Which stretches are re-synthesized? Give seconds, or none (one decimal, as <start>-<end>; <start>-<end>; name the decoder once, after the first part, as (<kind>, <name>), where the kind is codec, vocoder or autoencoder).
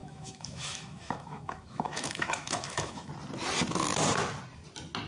0.0-3.1 (autoencoder, DAC-VAE)